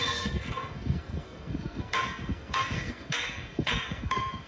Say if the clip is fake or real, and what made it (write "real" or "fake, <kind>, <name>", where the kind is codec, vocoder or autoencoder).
fake, codec, SNAC